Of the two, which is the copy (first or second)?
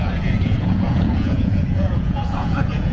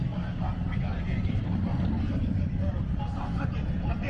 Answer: first